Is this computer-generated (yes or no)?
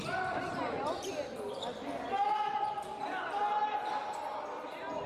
no